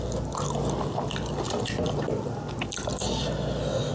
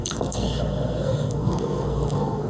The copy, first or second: second